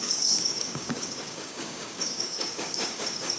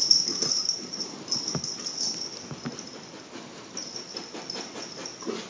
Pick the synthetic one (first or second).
first